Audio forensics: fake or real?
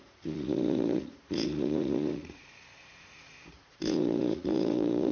fake